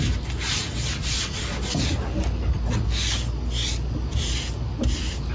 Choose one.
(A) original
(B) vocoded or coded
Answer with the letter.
A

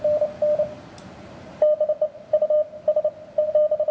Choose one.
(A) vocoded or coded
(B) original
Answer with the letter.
B